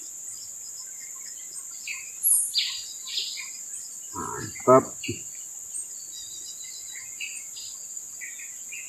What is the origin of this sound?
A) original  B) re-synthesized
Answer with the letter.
A